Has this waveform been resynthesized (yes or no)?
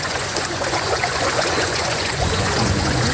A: yes